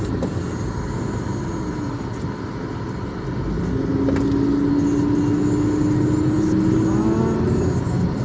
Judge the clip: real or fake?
real